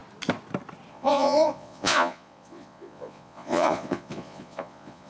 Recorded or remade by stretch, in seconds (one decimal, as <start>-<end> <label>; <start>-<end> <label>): 0.0-0.9 recorded; 0.9-5.1 remade